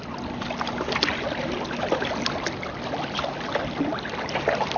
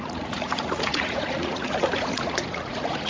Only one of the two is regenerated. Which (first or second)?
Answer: second